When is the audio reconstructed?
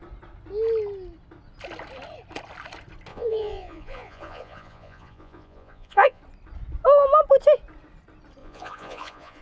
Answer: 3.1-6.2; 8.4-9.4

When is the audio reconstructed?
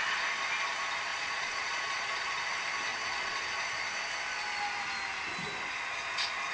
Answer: 1.1-2.3; 2.9-3.4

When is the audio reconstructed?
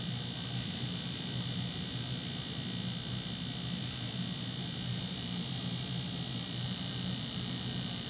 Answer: none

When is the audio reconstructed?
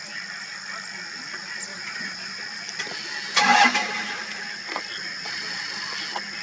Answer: 1.7-2.4; 5.1-5.6